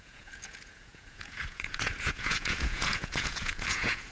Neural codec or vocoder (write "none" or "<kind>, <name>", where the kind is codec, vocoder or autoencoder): vocoder, Vocos